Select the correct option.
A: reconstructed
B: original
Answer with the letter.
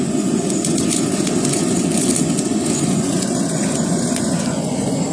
A